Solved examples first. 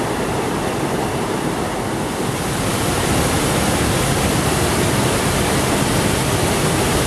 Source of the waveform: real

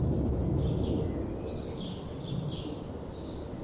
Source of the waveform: real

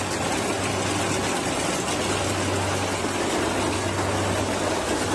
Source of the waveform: real